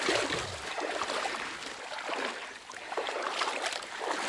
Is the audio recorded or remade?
recorded